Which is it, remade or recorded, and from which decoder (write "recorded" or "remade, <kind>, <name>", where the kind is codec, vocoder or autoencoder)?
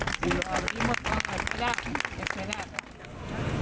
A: recorded